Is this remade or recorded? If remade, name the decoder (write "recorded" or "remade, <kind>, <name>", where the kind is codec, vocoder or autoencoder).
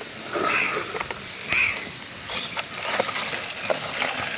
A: recorded